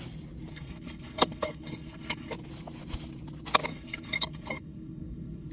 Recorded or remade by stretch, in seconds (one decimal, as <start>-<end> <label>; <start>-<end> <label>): 0.0-0.5 recorded; 0.5-2.3 remade; 2.3-3.7 recorded; 3.7-5.5 remade